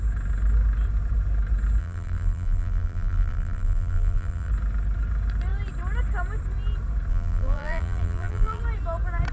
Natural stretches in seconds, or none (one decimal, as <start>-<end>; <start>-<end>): 0.0-1.8; 4.5-7.1; 8.6-9.3